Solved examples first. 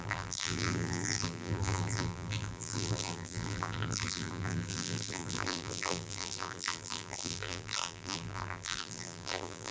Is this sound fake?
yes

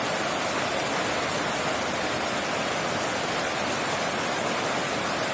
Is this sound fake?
no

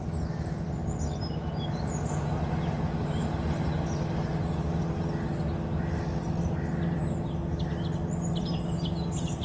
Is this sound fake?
no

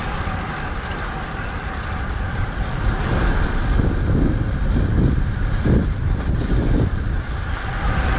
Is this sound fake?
yes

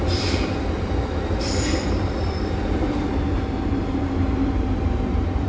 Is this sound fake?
yes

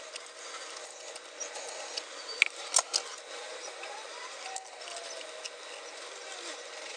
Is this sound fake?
no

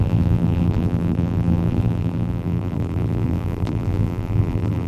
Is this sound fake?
yes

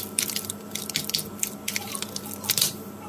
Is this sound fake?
yes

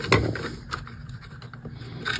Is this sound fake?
no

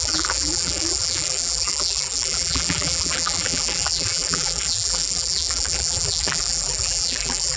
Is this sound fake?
yes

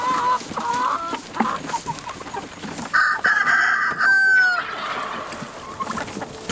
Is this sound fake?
no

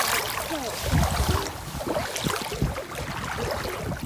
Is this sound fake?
no